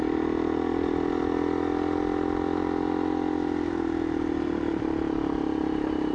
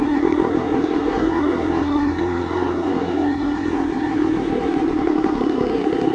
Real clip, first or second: first